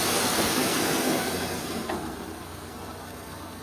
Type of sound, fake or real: fake